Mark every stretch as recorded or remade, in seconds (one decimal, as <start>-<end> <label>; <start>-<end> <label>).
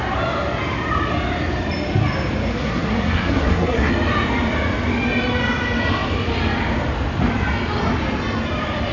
0.0-2.5 recorded; 2.5-3.9 remade; 3.9-8.9 recorded